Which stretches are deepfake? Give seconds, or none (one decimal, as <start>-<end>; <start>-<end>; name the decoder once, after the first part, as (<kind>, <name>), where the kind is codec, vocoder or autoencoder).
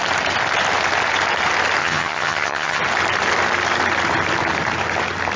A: 1.8-2.8 (vocoder, HiFi-GAN)